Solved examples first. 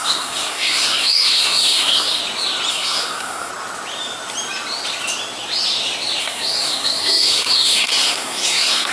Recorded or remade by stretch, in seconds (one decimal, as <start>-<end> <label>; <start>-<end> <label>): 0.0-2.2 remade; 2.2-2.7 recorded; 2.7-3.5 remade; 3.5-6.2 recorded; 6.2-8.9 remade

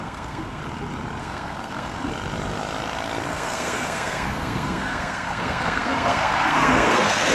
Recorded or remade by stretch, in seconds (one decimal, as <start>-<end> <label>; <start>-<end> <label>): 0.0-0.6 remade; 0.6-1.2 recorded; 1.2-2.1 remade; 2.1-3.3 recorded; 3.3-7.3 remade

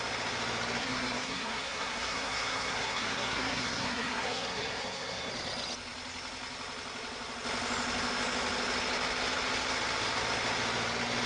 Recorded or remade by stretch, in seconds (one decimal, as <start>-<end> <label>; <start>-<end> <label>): 0.0-0.8 recorded; 0.8-5.3 remade; 5.3-11.3 recorded

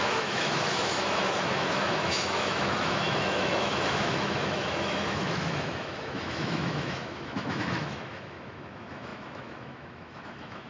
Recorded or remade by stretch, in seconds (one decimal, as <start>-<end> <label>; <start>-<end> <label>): 0.0-10.7 remade

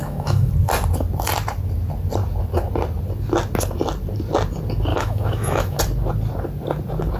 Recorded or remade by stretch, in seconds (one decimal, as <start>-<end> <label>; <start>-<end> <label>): 0.0-0.5 remade; 0.5-4.9 recorded; 4.9-5.8 remade; 5.8-7.2 recorded

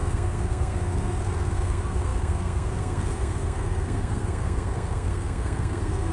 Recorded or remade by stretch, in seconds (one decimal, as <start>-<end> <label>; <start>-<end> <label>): 0.0-6.1 remade